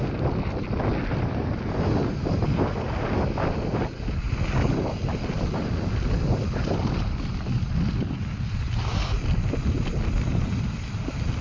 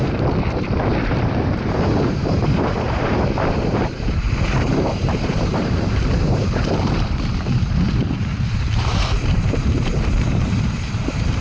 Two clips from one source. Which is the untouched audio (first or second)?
first